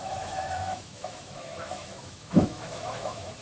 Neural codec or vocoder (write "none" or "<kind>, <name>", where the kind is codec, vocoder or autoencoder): autoencoder, DAC-VAE